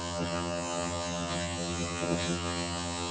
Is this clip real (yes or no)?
no